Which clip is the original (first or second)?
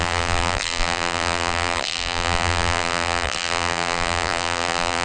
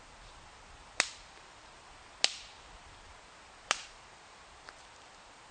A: second